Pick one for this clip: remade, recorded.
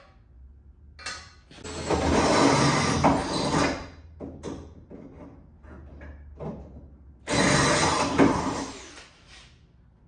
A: recorded